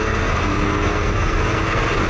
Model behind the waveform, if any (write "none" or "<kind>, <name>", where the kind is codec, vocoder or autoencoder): codec, SNAC